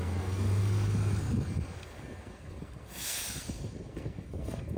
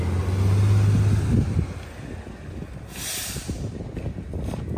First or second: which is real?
second